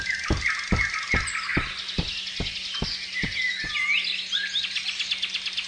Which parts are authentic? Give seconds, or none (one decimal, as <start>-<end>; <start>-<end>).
0.0-5.7